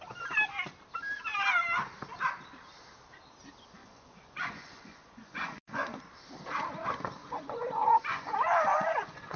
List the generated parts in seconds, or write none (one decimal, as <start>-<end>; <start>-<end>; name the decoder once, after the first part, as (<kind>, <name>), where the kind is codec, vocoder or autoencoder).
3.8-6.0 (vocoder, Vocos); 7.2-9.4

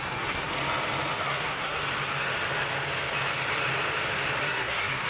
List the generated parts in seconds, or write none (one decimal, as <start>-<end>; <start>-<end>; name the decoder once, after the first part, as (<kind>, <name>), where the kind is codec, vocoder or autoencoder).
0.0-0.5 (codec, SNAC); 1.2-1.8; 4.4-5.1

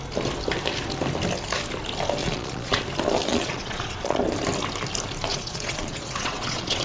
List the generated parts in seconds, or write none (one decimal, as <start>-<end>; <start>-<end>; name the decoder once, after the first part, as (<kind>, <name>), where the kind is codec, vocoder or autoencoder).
2.2-2.8 (vocoder, Vocos); 3.3-4.2; 5.3-6.8

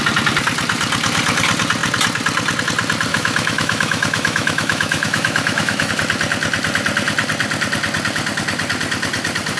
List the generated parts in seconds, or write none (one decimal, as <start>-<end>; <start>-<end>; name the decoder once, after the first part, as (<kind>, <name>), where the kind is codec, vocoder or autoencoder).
3.1-5.9 (autoencoder, DAC-VAE)

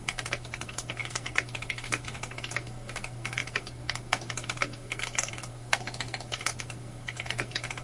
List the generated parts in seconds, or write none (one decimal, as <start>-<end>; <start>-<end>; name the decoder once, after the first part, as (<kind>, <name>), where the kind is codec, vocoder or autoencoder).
0.0-7.8 (codec, SNAC)